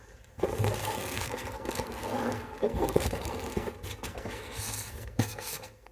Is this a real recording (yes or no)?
no